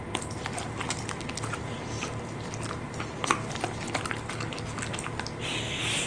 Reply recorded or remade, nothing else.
recorded